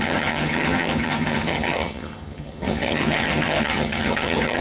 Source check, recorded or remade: remade